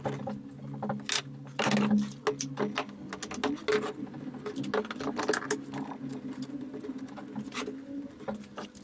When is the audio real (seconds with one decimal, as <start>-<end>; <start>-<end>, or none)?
0.0-8.8